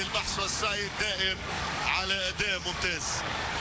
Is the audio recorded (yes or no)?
no